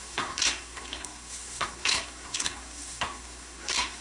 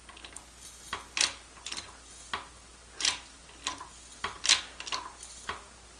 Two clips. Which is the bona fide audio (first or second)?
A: second